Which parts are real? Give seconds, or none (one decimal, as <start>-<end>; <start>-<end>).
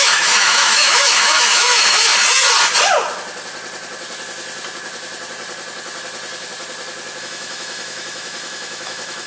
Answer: 2.1-7.2